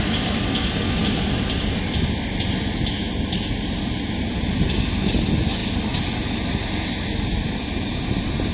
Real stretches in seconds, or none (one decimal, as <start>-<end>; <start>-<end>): 0.0-8.5